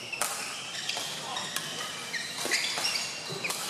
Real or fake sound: real